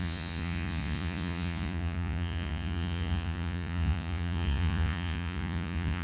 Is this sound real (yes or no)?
no